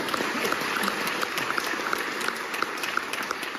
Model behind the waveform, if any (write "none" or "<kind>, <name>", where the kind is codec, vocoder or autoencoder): vocoder, BigVGAN v2